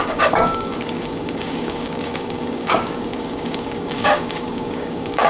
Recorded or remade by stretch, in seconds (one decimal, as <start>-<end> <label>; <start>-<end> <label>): 0.0-5.3 remade